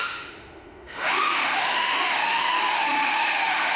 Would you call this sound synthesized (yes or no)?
yes